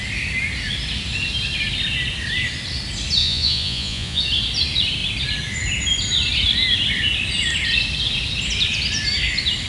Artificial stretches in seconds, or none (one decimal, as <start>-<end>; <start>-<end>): 3.2-4.2